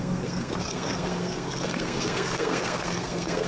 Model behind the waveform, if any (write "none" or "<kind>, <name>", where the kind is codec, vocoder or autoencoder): codec, SNAC